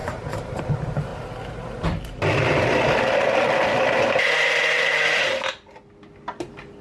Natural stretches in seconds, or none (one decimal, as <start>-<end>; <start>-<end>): 0.6-6.8